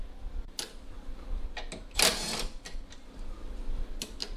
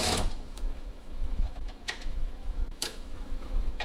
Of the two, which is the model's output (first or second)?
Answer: second